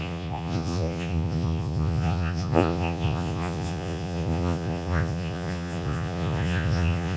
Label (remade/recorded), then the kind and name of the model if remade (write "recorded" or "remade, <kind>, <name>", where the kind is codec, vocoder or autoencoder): remade, vocoder, Vocos